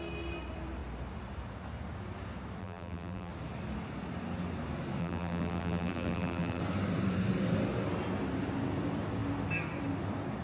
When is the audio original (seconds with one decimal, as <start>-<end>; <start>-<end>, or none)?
0.0-2.6; 3.3-5.0; 6.6-10.4